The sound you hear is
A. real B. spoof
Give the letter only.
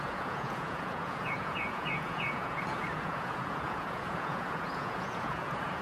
B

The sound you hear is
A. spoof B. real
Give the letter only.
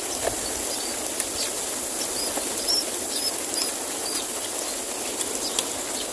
B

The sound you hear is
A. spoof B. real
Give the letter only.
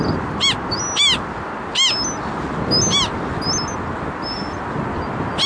B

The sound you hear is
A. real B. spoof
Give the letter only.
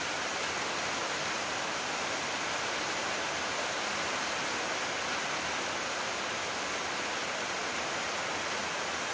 A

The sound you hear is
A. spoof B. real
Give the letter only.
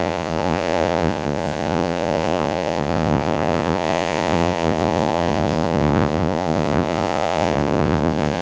A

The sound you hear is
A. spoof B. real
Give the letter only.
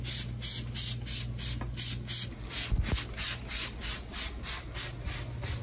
B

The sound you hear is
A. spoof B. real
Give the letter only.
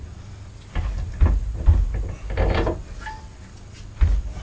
B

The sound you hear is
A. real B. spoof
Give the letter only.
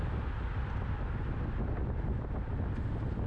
A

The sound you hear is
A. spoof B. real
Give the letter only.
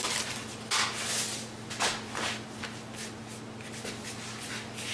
B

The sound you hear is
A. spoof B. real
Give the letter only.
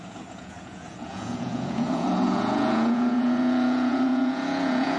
A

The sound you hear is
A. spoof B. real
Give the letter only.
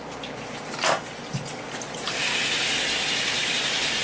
B